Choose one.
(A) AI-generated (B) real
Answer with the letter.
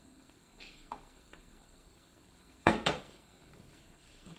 A